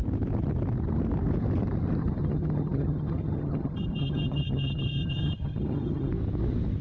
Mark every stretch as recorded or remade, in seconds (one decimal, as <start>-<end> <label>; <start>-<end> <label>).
0.0-2.0 recorded; 2.0-6.1 remade; 6.1-6.8 recorded